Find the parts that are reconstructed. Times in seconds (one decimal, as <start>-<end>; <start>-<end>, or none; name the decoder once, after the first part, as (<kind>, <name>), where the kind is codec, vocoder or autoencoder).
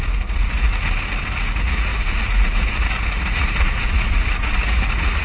0.0-0.8 (vocoder, Vocos); 1.4-5.2